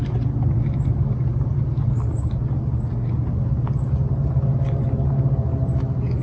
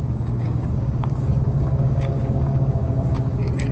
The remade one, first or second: second